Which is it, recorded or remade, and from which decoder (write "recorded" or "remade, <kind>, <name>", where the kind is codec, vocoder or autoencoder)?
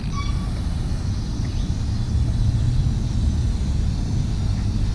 recorded